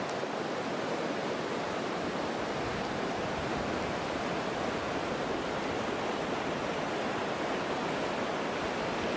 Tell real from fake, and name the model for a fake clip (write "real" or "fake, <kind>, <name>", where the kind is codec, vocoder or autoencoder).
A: real